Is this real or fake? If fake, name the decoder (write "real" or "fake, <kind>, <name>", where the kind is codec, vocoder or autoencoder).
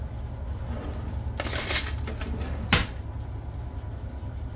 real